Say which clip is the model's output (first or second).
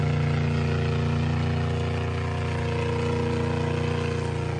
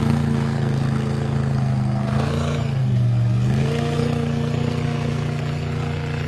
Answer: second